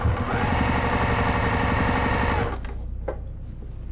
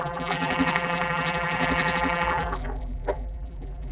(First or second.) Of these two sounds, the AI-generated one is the second